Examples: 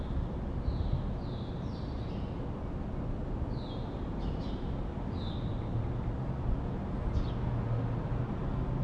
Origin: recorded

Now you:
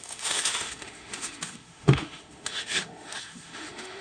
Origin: remade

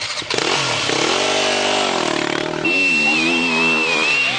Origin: recorded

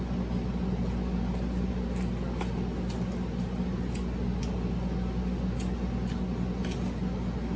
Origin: recorded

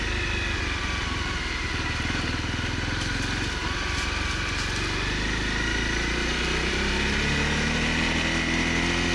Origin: recorded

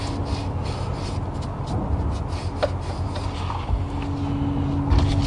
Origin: recorded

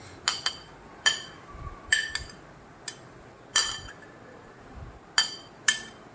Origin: recorded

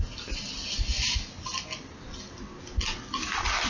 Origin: recorded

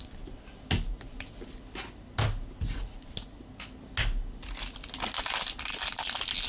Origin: recorded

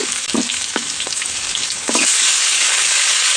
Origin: remade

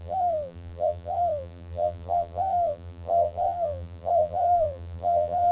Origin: remade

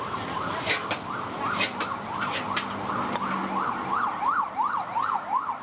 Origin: recorded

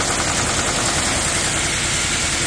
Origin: recorded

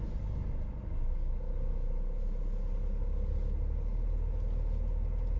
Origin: recorded